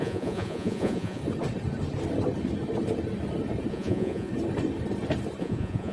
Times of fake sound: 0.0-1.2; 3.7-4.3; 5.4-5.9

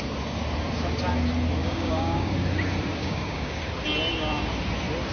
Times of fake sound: 1.6-2.3; 3.0-3.6

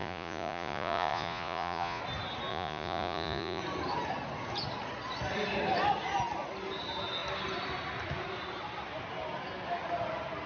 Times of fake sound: 0.0-2.0; 2.5-3.6

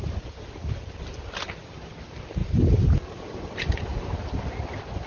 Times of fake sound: 2.4-4.3

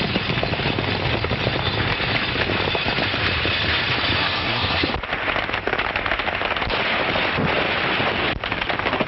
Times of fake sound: 4.2-4.9

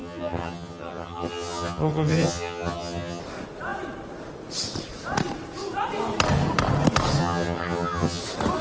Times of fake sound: 0.0-3.2; 7.2-8.2

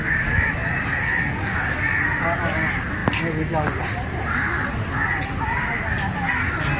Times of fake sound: none